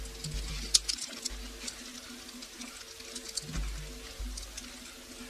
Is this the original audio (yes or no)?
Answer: yes